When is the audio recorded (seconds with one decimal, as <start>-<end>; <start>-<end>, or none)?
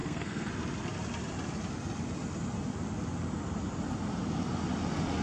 0.5-5.2